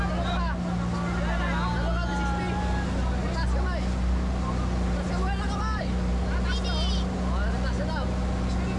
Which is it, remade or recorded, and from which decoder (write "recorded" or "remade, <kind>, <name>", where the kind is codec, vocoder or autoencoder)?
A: recorded